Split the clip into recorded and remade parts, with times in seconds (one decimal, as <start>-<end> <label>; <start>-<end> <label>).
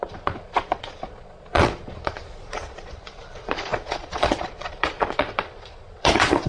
0.0-6.5 remade